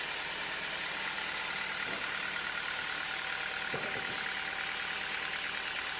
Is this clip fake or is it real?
real